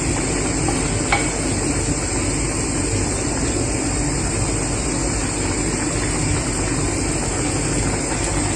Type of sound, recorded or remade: recorded